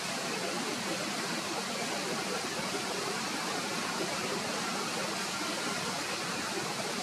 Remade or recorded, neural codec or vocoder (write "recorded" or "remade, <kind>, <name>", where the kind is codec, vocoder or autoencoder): recorded